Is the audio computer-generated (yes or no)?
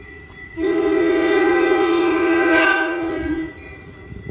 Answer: yes